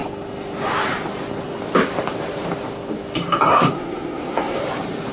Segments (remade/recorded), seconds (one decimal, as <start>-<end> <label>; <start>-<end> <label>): 0.0-3.5 recorded; 3.5-4.6 remade; 4.6-5.1 recorded